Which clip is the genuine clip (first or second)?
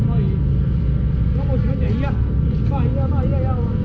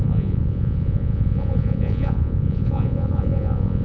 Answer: first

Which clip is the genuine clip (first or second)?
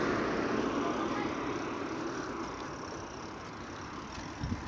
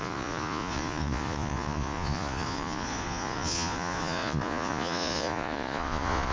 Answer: first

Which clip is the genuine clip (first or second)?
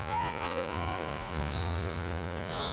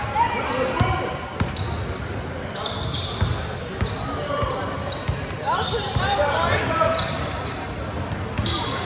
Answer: second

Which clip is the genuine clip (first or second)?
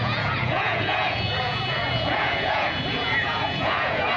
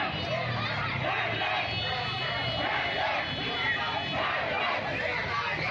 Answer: second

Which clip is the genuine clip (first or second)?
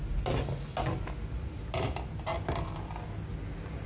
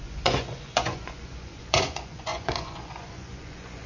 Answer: first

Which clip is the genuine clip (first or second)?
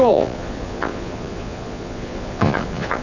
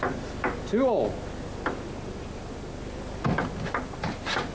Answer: second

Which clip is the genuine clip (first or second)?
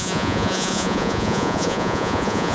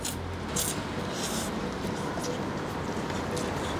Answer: second